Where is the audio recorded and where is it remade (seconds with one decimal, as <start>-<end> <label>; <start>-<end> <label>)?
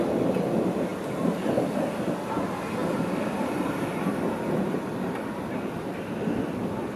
0.0-7.0 recorded